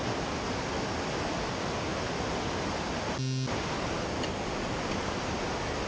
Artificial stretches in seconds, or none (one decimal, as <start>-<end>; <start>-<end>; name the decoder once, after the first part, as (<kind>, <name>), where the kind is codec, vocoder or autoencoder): none